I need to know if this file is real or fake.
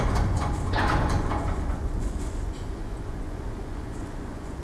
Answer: fake